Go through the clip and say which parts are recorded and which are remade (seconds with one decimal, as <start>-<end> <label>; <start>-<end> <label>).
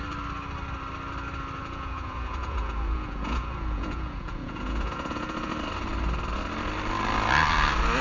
0.0-1.6 recorded; 1.6-5.5 remade; 5.5-8.0 recorded